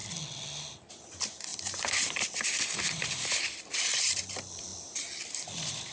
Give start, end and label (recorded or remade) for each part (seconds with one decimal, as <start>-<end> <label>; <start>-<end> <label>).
0.0-0.9 recorded; 0.9-4.7 remade; 4.7-5.2 recorded; 5.2-5.9 remade